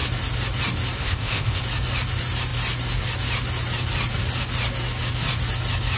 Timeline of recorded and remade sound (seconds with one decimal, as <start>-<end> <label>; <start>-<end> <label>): 0.0-1.0 recorded; 1.0-1.6 remade; 1.6-6.0 recorded